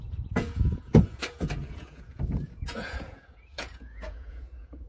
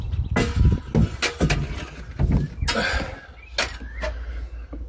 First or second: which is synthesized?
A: first